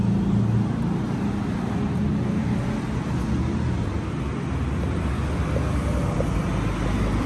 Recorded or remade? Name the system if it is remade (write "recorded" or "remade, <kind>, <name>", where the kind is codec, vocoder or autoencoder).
recorded